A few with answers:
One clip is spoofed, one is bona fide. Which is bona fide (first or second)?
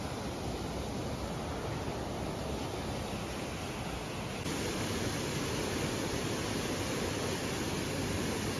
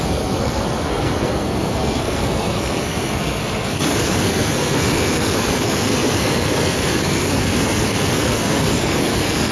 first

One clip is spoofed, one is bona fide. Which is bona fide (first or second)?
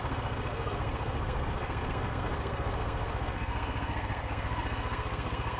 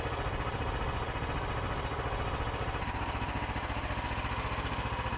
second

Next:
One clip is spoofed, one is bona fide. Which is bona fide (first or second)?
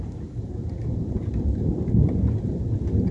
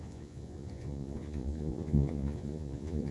first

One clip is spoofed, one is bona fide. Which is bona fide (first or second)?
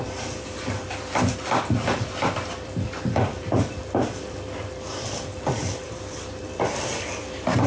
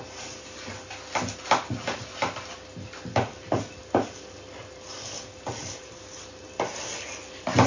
second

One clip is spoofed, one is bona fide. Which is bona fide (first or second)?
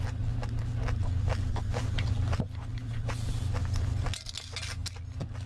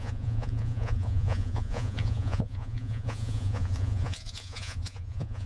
first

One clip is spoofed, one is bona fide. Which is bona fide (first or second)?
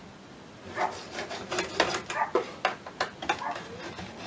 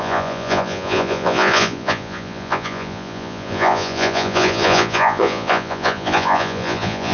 first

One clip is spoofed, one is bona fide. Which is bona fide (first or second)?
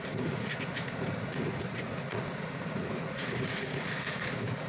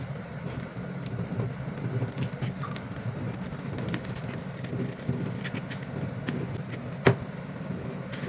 second